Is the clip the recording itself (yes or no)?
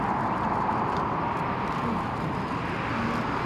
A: yes